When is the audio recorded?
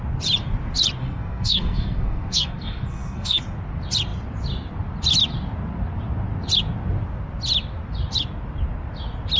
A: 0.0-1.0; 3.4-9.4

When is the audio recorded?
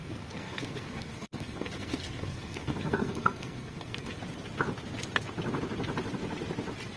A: 4.2-7.0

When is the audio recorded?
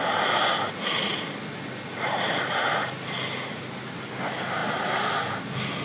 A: 0.0-5.8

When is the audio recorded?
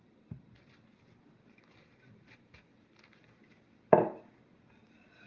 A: 0.0-5.3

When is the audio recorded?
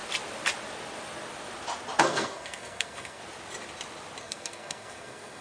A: 0.0-2.0; 3.2-4.2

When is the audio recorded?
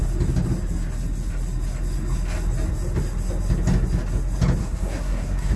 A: 0.0-4.6